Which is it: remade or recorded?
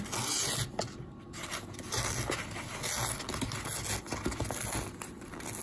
recorded